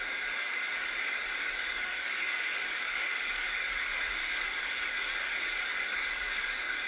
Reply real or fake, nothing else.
fake